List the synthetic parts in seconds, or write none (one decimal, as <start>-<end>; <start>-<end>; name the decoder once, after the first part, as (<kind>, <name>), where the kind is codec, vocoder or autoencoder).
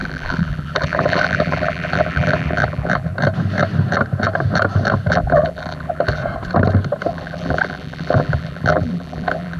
0.0-3.1 (vocoder, BigVGAN v2); 5.1-6.2; 7.1-9.6